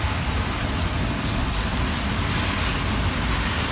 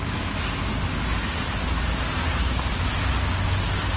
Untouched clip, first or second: second